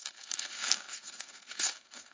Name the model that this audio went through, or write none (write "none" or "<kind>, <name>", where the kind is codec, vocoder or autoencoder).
codec, SNAC